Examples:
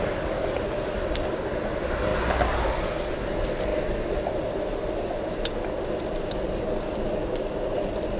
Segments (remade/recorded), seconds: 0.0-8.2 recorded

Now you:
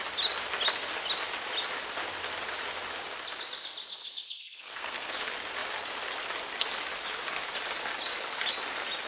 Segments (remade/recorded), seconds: 0.0-3.9 recorded; 3.9-5.1 remade; 5.1-9.1 recorded

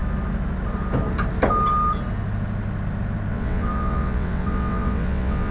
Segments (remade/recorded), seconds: 0.0-3.3 recorded; 3.3-5.5 remade

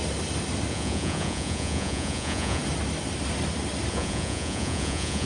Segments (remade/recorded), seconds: 0.0-0.7 recorded; 0.7-2.6 remade; 2.6-3.9 recorded; 3.9-5.3 remade

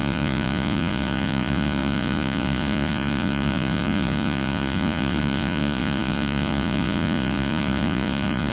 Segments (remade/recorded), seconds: 0.0-8.5 remade

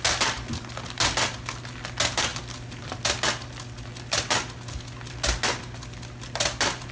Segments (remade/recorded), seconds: 0.0-6.9 recorded

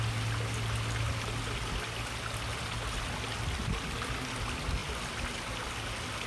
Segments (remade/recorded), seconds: 0.0-6.3 recorded